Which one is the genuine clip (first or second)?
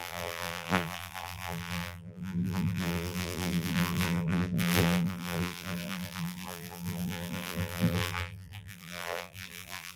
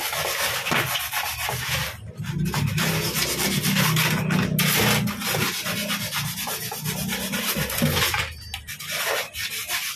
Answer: second